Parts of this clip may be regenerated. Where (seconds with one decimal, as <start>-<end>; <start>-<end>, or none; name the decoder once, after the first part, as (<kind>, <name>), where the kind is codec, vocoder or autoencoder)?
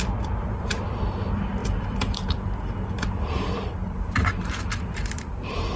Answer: 0.0-5.8 (vocoder, BigVGAN v2)